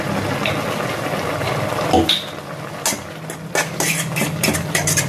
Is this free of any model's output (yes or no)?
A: yes